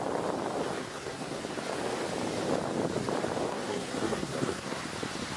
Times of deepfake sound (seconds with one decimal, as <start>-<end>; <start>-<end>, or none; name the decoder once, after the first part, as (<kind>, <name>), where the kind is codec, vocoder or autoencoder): 0.8-1.4 (codec, SNAC); 3.5-4.8